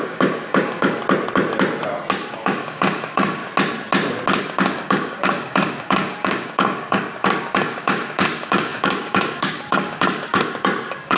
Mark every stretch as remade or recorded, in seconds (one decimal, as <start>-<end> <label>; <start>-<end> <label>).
0.0-1.0 remade; 1.0-2.3 recorded; 2.3-3.4 remade; 3.4-4.4 recorded; 4.4-11.2 remade

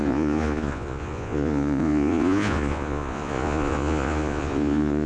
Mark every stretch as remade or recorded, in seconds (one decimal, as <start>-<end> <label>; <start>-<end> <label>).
0.0-5.1 remade

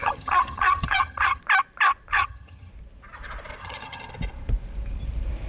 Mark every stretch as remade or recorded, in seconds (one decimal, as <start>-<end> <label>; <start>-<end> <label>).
0.0-1.4 remade; 1.4-2.1 recorded; 2.1-2.7 remade; 2.7-3.6 recorded; 3.6-4.1 remade; 4.1-5.5 recorded